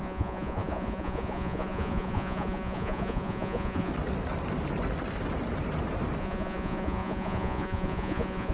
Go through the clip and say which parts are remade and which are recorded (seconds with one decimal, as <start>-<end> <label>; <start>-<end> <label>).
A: 0.0-3.9 remade; 3.9-6.2 recorded; 6.2-8.5 remade